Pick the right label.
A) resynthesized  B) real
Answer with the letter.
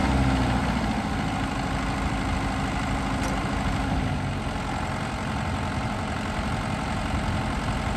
A